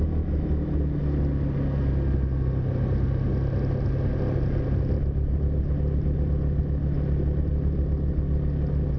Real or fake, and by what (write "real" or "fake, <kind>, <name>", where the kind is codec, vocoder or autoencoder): real